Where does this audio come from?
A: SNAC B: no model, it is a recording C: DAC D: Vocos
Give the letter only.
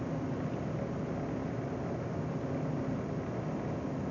B